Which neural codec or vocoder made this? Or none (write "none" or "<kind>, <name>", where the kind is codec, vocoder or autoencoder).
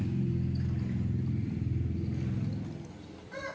none